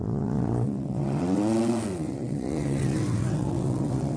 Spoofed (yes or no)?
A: yes